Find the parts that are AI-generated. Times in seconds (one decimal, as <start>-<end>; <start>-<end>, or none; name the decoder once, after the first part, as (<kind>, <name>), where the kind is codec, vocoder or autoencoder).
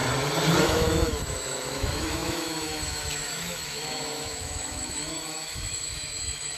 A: 0.6-6.6 (autoencoder, DAC-VAE)